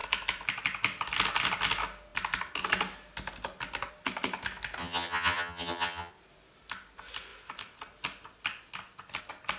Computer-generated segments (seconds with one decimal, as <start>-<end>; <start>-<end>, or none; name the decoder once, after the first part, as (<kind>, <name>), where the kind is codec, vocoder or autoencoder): 4.8-6.1 (vocoder, HiFi-GAN)